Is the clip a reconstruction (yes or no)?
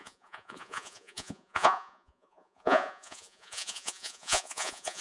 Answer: yes